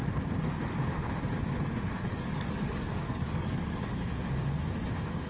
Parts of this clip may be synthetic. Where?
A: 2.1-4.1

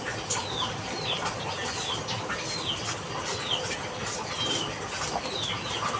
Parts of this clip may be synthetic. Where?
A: none

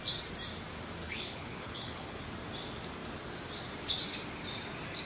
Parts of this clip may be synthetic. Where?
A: 1.0-2.3